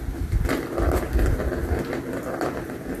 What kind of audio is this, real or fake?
real